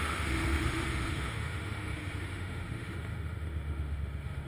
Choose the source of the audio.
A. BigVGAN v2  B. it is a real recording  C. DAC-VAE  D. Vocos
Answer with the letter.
C